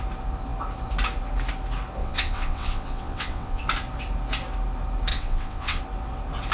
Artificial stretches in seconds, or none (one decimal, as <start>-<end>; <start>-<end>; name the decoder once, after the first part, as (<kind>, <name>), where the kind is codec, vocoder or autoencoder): 2.0-3.6 (vocoder, WaveNeXt); 5.1-5.8